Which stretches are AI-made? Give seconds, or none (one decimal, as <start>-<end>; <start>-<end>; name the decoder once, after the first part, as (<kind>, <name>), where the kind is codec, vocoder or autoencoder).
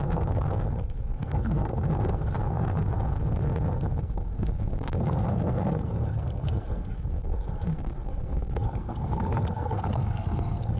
0.0-10.8 (codec, SNAC)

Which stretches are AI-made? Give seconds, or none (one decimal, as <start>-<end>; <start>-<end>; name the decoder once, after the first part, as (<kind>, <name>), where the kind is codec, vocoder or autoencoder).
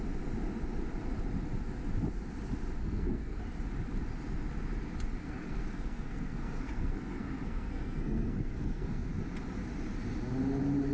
2.8-3.4 (codec, SNAC); 5.2-9.2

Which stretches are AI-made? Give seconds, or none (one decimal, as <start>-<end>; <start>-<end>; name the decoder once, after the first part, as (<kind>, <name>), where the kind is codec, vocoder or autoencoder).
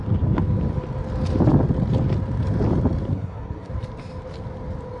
3.1-3.7 (codec, SNAC)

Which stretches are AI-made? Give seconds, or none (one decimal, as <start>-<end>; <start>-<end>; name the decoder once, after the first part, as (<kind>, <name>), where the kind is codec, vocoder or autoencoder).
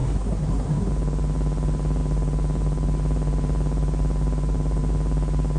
0.0-0.9 (codec, SNAC)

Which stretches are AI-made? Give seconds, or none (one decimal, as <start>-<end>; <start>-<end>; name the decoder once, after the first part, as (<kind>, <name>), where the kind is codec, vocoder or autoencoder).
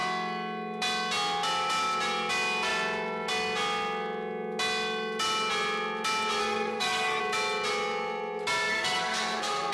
6.4-7.2 (codec, SNAC); 8.7-9.7